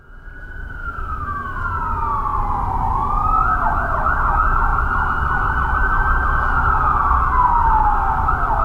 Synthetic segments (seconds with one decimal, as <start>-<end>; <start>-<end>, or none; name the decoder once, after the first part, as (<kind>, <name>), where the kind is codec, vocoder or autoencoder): 0.8-1.6 (autoencoder, DAC-VAE)